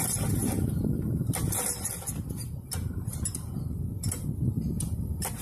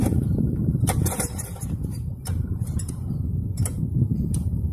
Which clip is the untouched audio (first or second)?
first